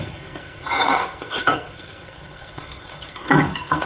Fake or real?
fake